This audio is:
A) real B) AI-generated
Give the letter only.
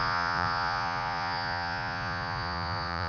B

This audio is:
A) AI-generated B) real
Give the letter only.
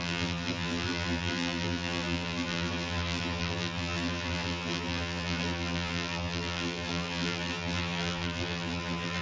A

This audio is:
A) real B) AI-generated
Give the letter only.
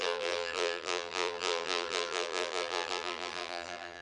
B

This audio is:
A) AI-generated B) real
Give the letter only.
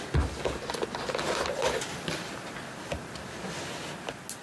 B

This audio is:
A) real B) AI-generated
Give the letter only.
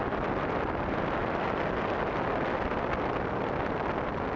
A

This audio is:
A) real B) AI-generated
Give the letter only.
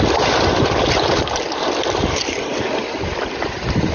A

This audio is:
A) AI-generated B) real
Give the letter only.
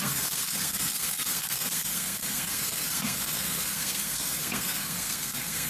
A